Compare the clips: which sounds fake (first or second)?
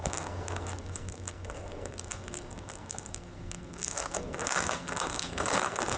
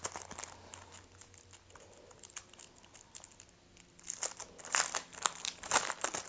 first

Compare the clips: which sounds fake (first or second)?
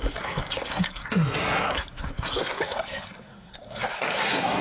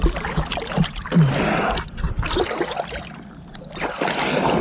first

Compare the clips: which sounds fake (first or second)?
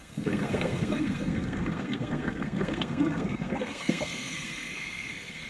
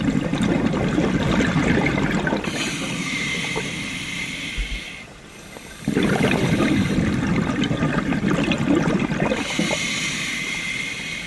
first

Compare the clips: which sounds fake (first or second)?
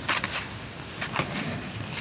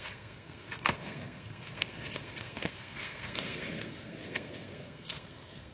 second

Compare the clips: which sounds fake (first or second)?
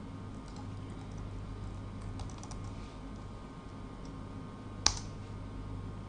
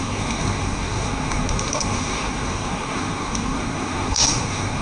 second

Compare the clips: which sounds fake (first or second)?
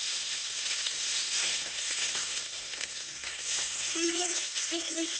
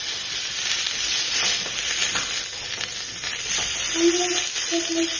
first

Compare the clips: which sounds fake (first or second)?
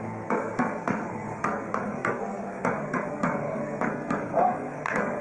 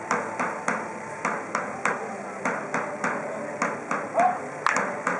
first